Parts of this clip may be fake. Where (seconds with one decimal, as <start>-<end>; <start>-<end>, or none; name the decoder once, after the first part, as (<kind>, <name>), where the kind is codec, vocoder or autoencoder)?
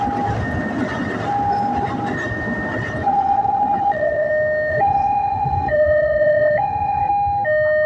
3.0-4.3 (vocoder, WaveNeXt); 4.7-7.1